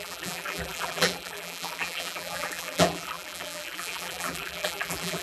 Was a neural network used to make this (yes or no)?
yes